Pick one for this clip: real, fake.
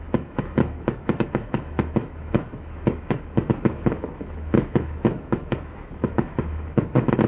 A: fake